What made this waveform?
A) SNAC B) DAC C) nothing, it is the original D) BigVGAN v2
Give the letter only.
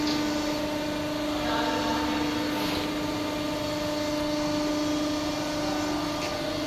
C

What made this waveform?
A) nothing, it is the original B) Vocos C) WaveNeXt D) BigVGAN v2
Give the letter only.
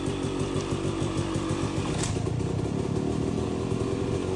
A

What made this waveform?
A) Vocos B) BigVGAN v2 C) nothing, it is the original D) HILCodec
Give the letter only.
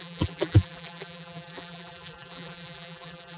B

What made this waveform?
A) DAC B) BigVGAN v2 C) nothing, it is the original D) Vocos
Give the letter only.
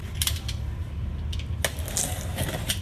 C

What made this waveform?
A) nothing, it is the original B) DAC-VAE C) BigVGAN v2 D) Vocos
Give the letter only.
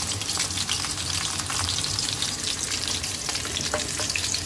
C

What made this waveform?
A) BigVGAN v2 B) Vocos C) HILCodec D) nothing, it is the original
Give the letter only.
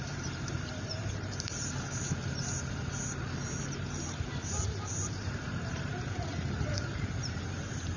A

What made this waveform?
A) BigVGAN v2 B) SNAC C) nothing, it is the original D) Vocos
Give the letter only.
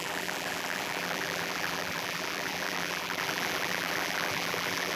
A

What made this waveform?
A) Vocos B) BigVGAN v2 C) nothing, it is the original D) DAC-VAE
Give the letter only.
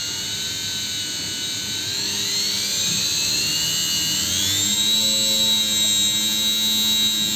C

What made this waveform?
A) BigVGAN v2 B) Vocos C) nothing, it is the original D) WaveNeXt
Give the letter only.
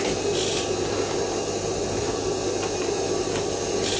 C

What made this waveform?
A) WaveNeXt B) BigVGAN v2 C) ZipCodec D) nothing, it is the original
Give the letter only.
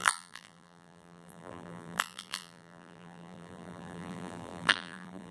B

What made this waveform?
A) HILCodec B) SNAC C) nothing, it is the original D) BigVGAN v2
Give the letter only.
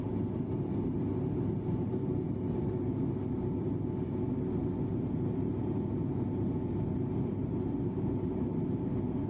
C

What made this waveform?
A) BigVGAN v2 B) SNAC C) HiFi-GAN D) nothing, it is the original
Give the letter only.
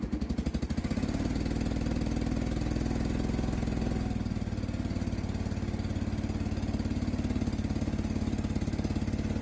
D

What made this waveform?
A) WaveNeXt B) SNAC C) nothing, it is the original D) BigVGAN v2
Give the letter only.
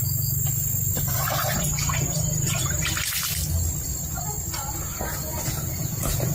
C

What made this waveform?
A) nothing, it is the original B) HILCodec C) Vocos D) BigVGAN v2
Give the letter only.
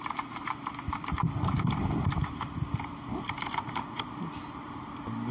D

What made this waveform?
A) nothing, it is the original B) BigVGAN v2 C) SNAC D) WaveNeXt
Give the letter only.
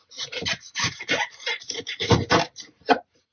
B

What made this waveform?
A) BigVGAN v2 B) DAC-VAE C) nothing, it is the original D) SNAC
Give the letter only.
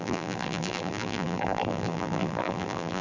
A